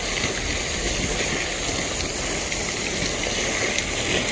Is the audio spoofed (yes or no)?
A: no